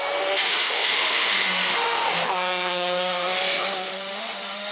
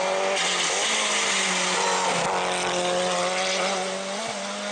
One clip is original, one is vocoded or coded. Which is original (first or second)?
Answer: second